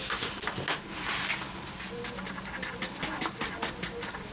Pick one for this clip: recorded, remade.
recorded